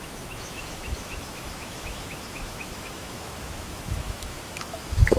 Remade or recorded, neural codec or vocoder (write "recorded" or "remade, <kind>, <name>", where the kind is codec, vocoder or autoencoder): remade, autoencoder, DAC-VAE